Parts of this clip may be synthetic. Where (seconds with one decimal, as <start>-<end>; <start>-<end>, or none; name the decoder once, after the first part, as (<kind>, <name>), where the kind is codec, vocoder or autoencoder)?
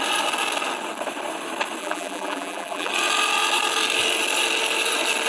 1.8-2.9 (vocoder, BigVGAN v2)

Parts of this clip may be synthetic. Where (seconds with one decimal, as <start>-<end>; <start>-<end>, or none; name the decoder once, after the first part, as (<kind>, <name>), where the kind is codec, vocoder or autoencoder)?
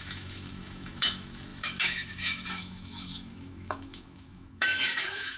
0.0-5.4 (autoencoder, DAC-VAE)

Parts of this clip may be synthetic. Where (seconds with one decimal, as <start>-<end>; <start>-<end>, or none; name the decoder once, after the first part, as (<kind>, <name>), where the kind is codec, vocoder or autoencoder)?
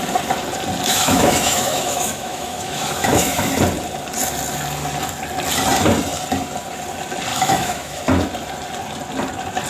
0.9-3.5 (autoencoder, DAC-VAE); 7.3-8.0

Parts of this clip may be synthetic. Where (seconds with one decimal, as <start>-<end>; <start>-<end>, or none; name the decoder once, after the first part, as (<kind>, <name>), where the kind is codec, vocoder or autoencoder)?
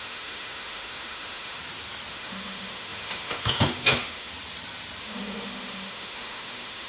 0.0-1.6 (autoencoder, DAC-VAE); 2.1-4.3; 5.0-6.9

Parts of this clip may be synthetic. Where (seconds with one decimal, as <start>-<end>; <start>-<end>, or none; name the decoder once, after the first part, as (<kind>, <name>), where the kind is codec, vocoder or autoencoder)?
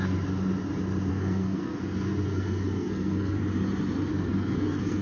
1.1-3.4 (codec, SNAC); 4.1-5.0